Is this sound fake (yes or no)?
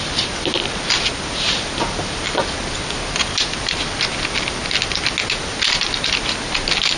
no